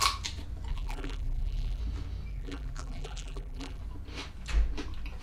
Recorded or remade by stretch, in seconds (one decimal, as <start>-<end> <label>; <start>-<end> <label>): 0.0-0.7 recorded; 0.7-1.8 remade; 1.8-2.3 recorded; 2.3-3.8 remade; 3.8-5.2 recorded

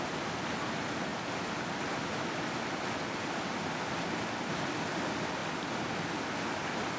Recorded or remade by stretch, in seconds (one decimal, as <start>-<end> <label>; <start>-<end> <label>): 0.0-7.0 recorded

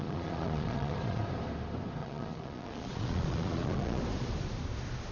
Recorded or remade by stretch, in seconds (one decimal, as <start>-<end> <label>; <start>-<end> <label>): 0.0-1.2 remade; 1.2-2.0 recorded; 2.0-4.0 remade; 4.0-5.1 recorded

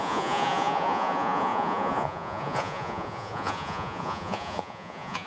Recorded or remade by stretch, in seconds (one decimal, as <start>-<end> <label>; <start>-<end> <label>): 0.0-5.3 remade

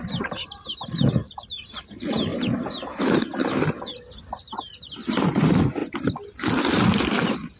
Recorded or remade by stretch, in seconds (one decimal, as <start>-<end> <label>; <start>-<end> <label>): 0.0-1.2 recorded; 1.2-1.8 remade; 1.8-7.6 recorded